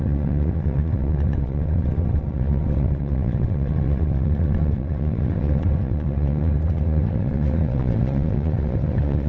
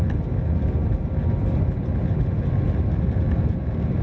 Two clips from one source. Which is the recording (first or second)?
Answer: second